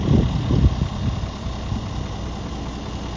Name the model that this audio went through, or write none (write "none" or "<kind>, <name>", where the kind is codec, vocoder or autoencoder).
none